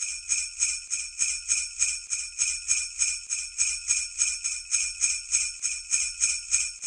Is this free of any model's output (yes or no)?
yes